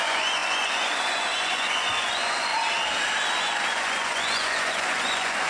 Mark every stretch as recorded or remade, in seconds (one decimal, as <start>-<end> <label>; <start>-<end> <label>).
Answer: 0.0-2.5 remade; 2.5-3.4 recorded; 3.4-5.5 remade